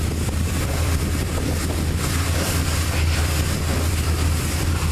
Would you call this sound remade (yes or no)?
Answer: yes